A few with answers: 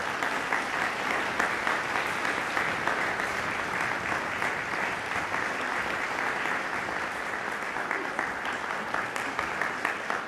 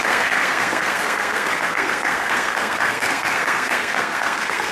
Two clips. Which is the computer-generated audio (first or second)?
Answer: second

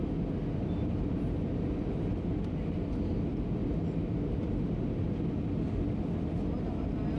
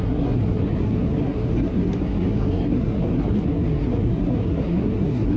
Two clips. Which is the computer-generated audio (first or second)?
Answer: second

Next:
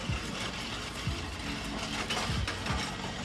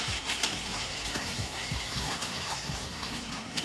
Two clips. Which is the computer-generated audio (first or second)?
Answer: second